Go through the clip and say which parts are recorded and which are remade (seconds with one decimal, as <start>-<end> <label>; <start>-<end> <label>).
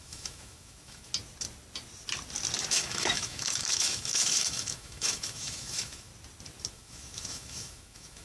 0.0-1.1 remade; 1.1-2.7 recorded; 2.7-6.1 remade; 6.1-6.7 recorded; 6.7-8.2 remade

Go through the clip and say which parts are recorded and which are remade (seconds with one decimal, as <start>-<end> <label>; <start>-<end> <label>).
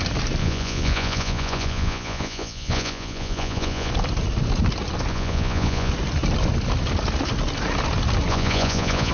0.0-0.4 recorded; 0.4-3.9 remade; 3.9-5.1 recorded; 5.1-5.9 remade; 5.9-8.3 recorded; 8.3-9.1 remade